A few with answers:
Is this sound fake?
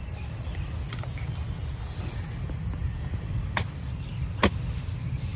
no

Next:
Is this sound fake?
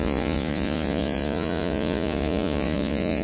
yes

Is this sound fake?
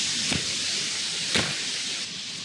no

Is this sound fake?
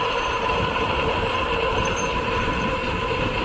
yes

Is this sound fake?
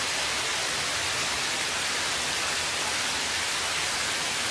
no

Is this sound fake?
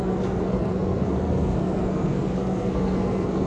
yes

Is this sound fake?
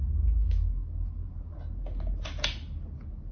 no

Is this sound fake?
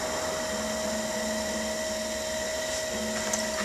no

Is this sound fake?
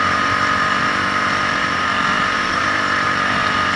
yes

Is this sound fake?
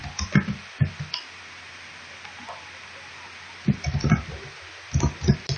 no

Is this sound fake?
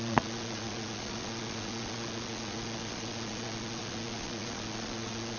yes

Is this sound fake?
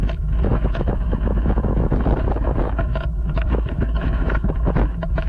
yes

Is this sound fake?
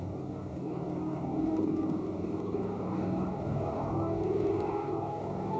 yes